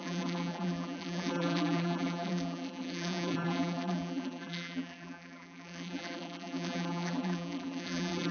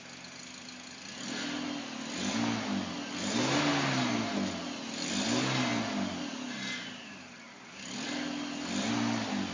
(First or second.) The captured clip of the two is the second